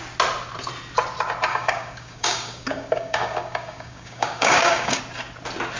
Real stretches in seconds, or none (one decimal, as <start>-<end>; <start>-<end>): 0.0-1.5; 5.0-5.8